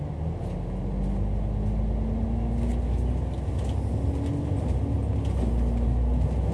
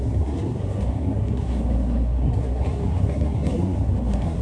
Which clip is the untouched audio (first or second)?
first